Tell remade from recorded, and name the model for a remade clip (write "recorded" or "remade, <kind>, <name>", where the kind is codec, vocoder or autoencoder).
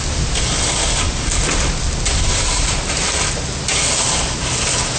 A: recorded